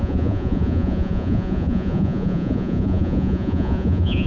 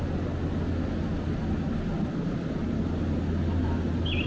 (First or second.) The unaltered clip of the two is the second